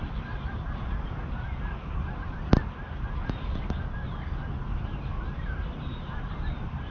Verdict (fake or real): real